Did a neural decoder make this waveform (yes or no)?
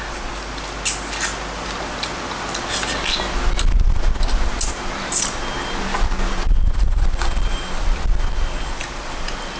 no